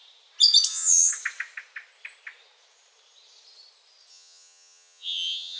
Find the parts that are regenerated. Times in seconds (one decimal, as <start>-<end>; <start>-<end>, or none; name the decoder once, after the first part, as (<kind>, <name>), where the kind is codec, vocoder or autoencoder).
0.7-1.1 (vocoder, HiFi-GAN); 4.1-5.6